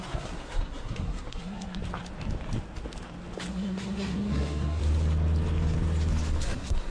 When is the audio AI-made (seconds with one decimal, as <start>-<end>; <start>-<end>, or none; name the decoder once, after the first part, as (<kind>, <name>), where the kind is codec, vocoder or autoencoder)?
0.0-1.8 (codec, SNAC); 3.5-4.8; 6.4-6.9